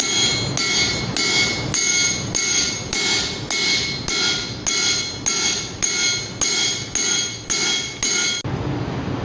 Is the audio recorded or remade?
recorded